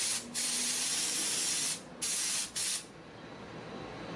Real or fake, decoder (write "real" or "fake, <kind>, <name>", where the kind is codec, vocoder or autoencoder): real